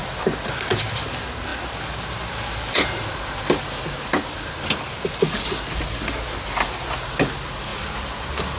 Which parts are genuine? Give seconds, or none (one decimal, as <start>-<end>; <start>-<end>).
0.0-8.6